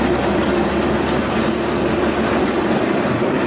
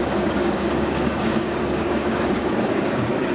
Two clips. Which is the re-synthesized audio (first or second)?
second